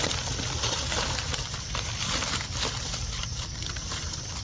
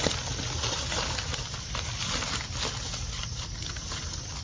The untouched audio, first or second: second